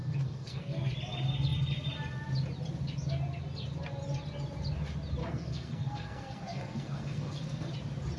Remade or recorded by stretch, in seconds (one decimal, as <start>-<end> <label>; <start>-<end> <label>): 0.0-0.9 remade; 0.9-5.2 recorded; 5.2-7.7 remade; 7.7-8.2 recorded